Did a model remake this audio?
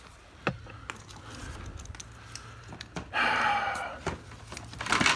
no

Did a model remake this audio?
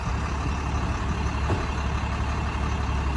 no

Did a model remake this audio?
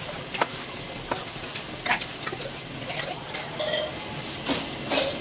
no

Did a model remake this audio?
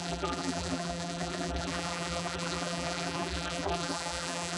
yes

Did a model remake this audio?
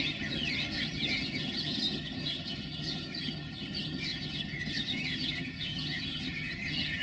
yes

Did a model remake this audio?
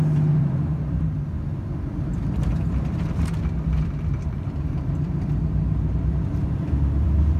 yes